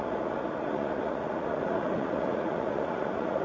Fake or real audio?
fake